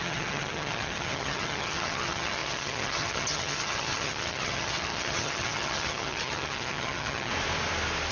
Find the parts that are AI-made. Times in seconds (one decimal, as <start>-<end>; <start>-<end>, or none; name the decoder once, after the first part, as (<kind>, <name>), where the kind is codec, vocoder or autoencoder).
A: 0.0-7.3 (vocoder, HiFi-GAN)